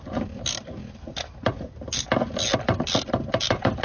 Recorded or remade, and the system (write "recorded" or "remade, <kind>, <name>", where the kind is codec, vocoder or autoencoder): recorded